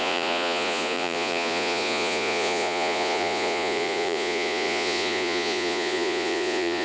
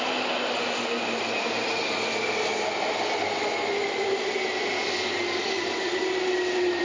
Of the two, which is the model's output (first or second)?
first